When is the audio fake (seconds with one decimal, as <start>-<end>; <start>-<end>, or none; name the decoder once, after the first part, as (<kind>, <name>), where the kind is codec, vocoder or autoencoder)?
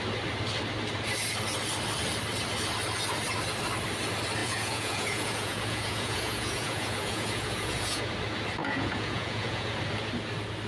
4.4-8.1 (vocoder, Vocos); 8.6-9.7